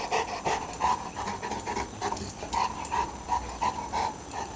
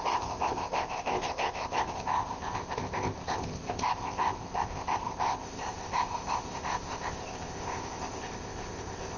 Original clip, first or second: first